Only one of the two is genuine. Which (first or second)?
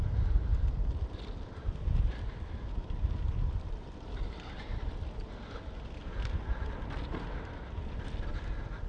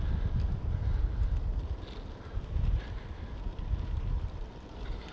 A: second